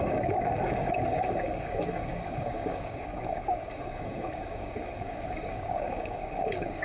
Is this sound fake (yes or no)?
yes